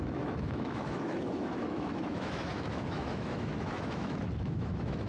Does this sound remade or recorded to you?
remade